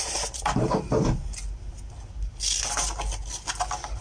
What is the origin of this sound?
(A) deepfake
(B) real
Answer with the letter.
B